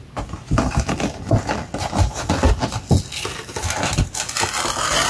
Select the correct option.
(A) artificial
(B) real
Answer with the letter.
B